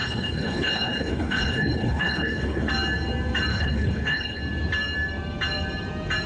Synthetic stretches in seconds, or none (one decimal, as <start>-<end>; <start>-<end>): 0.0-2.7; 3.5-4.4